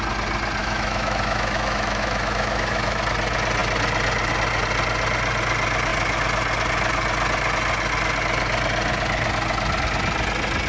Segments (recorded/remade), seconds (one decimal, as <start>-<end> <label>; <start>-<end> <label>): 0.0-0.6 recorded; 0.6-3.0 remade; 3.0-10.7 recorded